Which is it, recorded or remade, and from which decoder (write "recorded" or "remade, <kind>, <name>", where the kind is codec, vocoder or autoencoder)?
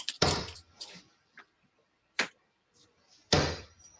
remade, vocoder, BigVGAN v2